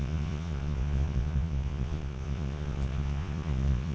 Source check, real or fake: fake